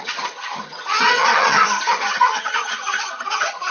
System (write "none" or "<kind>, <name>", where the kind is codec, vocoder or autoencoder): vocoder, HiFi-GAN